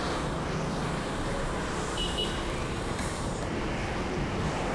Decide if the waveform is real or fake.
fake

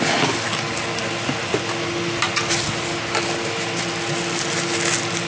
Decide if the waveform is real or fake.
real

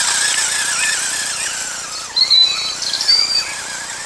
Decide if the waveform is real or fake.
real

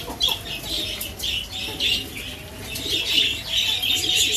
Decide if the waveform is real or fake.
real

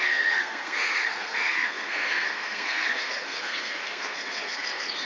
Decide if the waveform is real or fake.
fake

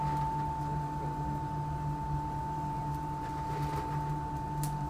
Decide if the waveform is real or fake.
real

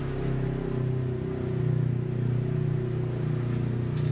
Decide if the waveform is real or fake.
real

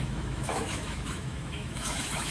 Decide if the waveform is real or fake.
fake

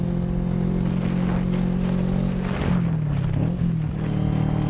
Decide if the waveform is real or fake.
real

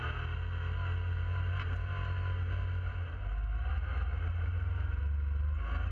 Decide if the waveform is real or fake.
real